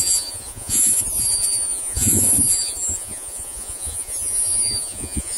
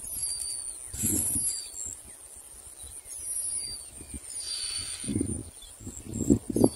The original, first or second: second